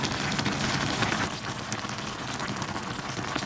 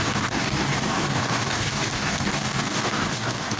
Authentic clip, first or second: first